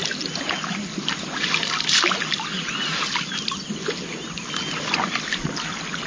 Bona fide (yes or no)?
yes